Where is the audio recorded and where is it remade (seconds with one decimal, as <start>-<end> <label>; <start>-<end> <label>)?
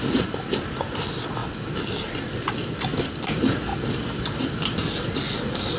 0.0-5.8 recorded